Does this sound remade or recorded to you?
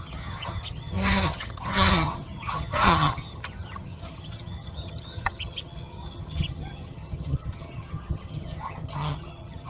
remade